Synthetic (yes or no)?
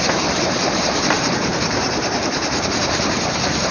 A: yes